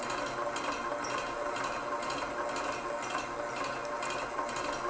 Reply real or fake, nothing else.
real